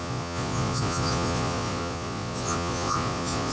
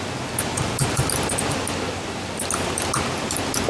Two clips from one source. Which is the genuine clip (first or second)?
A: second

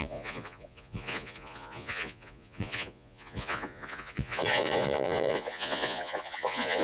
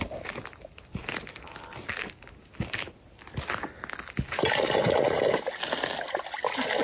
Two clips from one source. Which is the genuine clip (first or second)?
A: second